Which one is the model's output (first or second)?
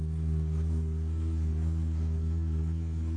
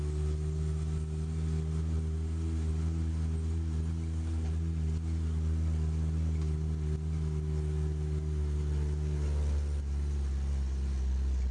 first